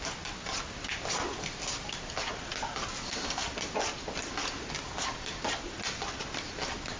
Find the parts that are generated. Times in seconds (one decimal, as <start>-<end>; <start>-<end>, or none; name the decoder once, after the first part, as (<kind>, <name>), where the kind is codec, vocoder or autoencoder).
none